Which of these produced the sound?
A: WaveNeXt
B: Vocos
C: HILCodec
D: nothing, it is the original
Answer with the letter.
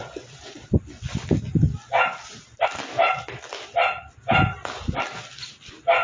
D